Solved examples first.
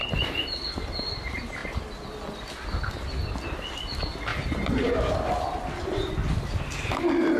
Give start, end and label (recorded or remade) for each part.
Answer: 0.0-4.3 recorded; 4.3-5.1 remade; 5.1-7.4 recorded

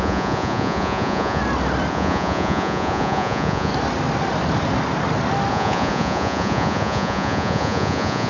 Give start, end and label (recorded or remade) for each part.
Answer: 0.0-1.4 remade; 1.4-1.9 recorded; 1.9-3.7 remade; 3.7-5.5 recorded; 5.5-8.3 remade

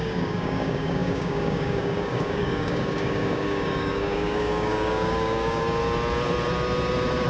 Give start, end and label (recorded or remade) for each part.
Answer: 0.0-5.8 remade; 5.8-7.3 recorded

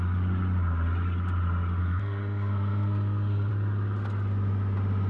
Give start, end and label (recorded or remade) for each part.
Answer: 0.0-1.8 recorded; 1.8-3.5 remade; 3.5-5.1 recorded